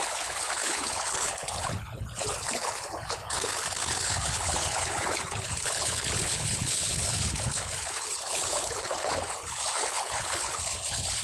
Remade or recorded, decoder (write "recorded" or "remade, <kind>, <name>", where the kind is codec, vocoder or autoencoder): remade, codec, HILCodec